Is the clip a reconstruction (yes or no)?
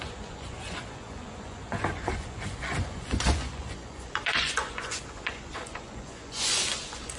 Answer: yes